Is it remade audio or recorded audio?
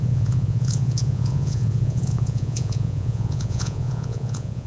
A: remade